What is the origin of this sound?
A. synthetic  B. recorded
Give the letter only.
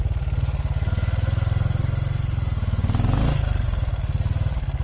B